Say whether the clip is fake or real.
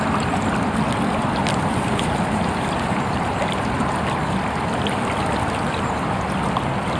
real